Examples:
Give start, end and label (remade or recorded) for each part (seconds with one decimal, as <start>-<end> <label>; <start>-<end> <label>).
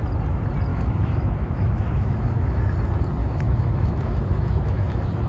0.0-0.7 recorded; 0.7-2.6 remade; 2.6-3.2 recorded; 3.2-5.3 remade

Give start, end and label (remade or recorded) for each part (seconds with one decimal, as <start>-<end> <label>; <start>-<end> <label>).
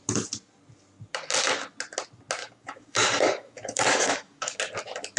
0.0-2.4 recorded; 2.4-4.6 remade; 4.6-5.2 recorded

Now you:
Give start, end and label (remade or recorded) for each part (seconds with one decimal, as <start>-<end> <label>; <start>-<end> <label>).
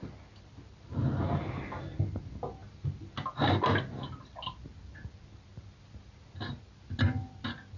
0.0-7.8 recorded